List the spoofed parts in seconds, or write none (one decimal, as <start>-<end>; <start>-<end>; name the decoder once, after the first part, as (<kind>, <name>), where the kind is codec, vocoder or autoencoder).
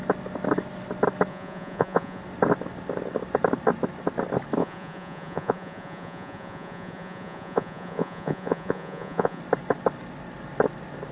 1.3-2.2 (vocoder, Vocos); 4.6-9.4